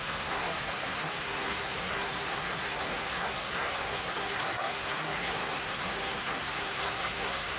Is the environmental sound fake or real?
fake